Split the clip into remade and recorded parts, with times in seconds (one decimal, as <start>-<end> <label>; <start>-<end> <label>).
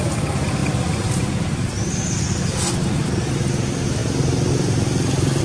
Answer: 0.0-5.4 recorded